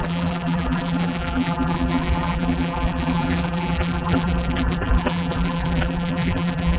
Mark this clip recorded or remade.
remade